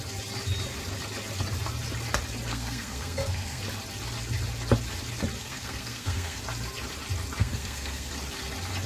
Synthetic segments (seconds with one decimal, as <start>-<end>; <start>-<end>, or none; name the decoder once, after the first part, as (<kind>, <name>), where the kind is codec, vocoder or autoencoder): 2.5-3.6 (codec, SNAC); 5.4-6.4; 7.4-8.1